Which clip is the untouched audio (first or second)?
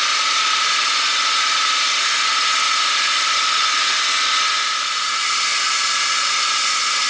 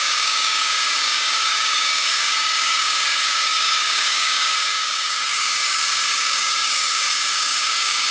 first